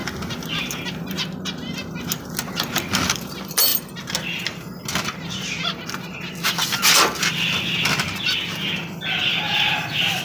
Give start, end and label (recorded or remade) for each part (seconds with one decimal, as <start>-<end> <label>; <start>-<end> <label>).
0.0-9.3 recorded; 9.3-10.2 remade